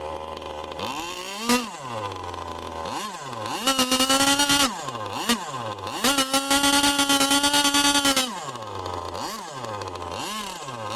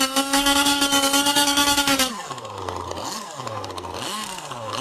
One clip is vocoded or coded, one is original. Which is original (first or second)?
first